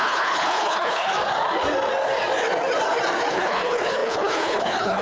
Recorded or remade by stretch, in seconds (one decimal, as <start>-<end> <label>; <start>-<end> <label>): 0.0-1.1 remade; 1.1-3.3 recorded; 3.3-5.0 remade